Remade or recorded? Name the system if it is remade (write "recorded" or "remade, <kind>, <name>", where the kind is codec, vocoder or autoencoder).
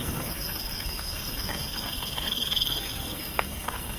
remade, codec, SNAC